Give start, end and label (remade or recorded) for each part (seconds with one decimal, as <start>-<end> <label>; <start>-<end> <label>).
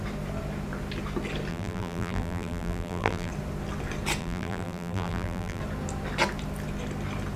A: 0.0-1.5 recorded; 1.5-3.3 remade; 3.3-4.2 recorded; 4.2-5.6 remade; 5.6-7.4 recorded